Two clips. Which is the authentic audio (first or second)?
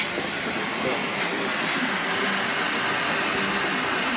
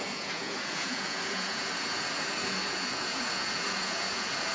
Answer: first